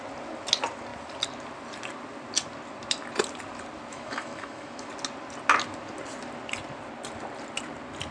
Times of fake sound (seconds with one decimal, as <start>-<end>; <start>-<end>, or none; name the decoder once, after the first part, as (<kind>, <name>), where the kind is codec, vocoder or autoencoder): 3.9-4.9 (autoencoder, DAC-VAE)

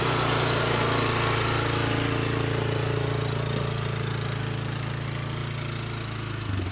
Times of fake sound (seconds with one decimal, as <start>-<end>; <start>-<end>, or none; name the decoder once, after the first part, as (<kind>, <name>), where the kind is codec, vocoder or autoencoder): none

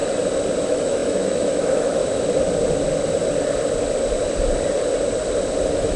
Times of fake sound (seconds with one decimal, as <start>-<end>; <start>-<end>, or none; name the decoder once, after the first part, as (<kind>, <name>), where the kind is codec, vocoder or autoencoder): 0.6-2.0 (autoencoder, DAC-VAE); 5.6-6.0

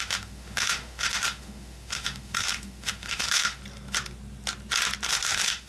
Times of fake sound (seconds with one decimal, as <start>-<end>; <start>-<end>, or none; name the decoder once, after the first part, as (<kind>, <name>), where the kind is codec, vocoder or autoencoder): 0.0-3.6 (autoencoder, DAC-VAE); 5.1-5.7